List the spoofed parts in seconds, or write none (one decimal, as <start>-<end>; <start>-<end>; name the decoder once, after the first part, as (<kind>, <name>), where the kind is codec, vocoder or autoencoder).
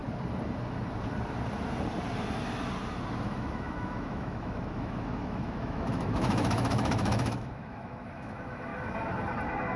3.1-8.7 (autoencoder, DAC-VAE)